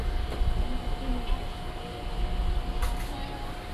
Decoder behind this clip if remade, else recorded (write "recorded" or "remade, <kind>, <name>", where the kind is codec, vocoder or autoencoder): recorded